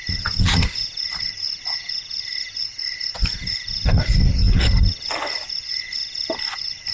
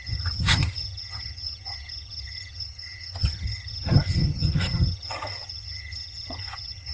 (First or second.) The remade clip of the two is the second